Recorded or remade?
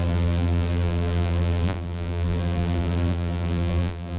remade